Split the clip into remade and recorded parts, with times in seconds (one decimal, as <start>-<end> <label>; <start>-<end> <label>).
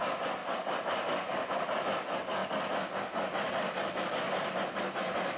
0.0-5.4 recorded